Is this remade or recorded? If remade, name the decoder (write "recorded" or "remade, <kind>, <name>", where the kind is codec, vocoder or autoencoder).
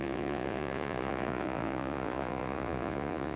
remade, vocoder, Vocos